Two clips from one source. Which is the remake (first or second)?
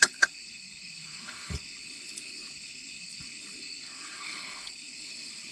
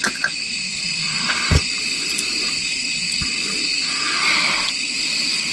first